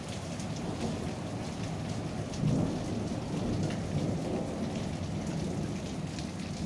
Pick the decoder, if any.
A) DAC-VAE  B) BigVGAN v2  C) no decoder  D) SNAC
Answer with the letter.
C